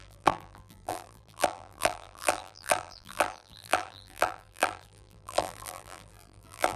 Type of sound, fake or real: fake